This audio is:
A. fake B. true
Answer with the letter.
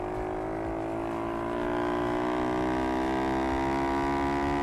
B